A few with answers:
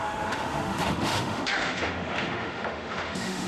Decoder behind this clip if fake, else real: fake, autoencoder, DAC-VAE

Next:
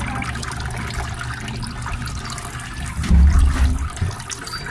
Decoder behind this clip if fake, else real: real